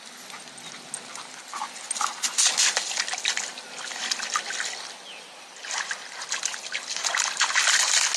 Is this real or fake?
real